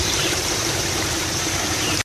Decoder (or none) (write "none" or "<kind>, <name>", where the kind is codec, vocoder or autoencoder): vocoder, BigVGAN v2